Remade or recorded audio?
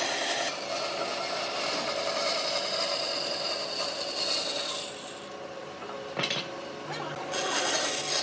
recorded